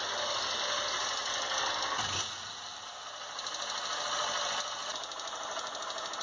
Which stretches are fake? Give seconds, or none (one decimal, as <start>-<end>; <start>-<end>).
none